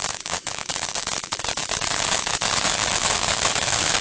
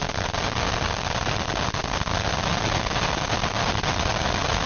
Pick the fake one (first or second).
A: first